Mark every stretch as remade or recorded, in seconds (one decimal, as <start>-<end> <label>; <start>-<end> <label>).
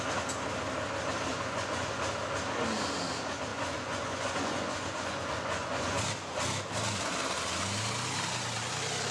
0.0-1.3 recorded; 1.3-2.0 remade; 2.0-3.5 recorded; 3.5-6.0 remade; 6.0-9.1 recorded